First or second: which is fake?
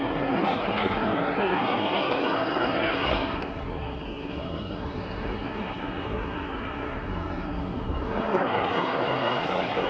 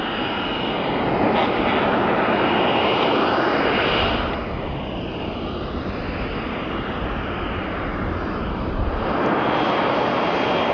first